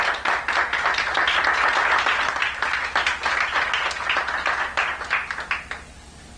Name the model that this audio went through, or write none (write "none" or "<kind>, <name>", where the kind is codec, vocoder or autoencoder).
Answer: none